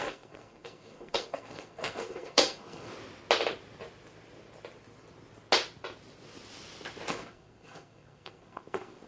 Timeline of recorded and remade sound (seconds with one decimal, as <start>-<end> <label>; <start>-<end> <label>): 0.0-2.9 remade; 2.9-7.1 recorded; 7.1-9.1 remade